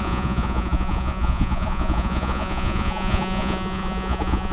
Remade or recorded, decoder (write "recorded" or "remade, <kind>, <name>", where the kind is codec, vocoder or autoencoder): remade, vocoder, Vocos